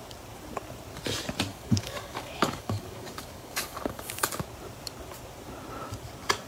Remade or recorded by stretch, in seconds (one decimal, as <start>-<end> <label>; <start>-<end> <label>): 0.0-1.5 recorded; 1.5-4.2 remade; 4.2-6.5 recorded